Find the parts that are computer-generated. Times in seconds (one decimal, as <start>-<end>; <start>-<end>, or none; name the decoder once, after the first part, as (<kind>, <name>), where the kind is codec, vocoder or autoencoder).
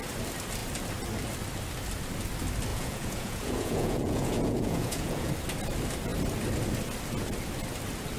2.7-5.3 (vocoder, Vocos)